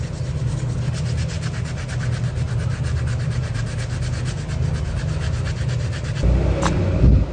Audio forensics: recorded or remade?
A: recorded